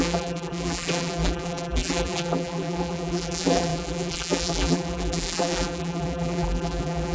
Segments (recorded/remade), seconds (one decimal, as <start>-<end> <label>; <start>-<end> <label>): 0.0-7.1 remade